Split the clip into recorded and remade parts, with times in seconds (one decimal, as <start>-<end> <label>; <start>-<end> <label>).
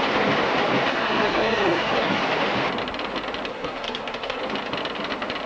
0.0-0.9 recorded; 0.9-2.2 remade; 2.2-3.5 recorded; 3.5-4.4 remade; 4.4-5.5 recorded